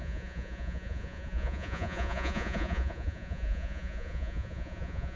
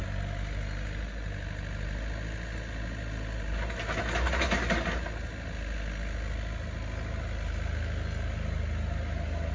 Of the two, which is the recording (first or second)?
second